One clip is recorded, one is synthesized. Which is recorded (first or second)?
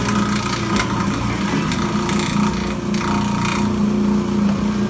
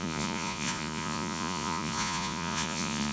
first